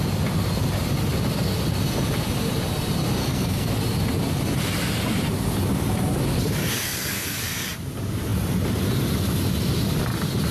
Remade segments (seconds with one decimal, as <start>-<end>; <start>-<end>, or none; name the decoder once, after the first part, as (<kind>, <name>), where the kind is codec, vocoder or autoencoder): 3.2-3.7 (codec, SNAC); 6.7-7.7